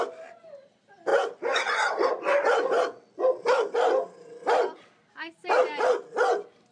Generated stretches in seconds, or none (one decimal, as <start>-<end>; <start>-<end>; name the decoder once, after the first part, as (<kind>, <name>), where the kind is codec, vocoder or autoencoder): none